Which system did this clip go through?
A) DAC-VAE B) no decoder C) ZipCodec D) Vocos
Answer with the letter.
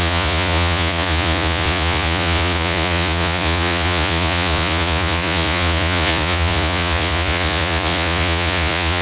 D